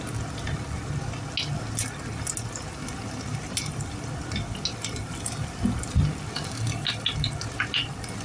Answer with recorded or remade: recorded